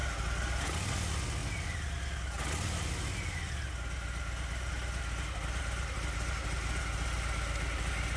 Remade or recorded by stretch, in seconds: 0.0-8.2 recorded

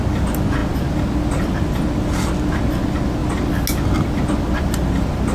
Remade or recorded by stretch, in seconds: 0.0-5.3 recorded

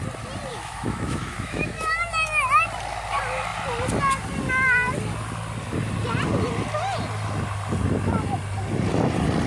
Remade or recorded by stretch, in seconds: 0.0-0.5 recorded; 0.5-2.1 remade; 2.1-9.5 recorded

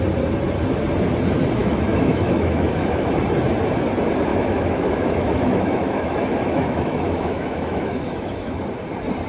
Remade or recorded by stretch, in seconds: 0.0-1.6 recorded; 1.6-3.1 remade; 3.1-4.3 recorded; 4.3-8.6 remade; 8.6-9.3 recorded

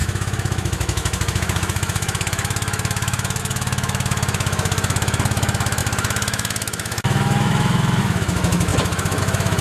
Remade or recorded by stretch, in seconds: 0.0-9.6 remade

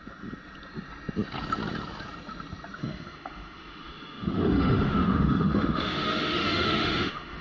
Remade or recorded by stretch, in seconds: 0.0-2.8 recorded; 2.8-7.4 remade